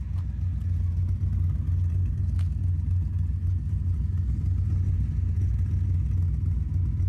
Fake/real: real